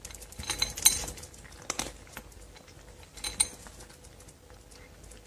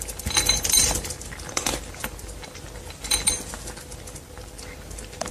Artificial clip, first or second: second